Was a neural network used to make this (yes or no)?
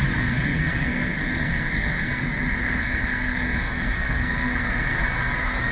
yes